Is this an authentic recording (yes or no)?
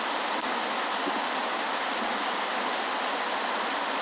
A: yes